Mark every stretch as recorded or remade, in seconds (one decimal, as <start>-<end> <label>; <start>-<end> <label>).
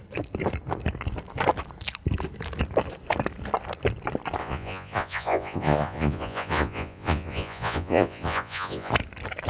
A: 0.0-4.4 recorded; 4.4-8.9 remade; 8.9-9.5 recorded